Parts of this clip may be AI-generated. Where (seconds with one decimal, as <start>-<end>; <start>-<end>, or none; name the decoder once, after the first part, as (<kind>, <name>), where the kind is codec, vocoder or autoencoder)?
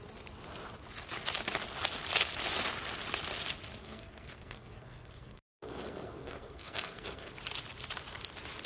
3.8-7.3 (codec, SNAC)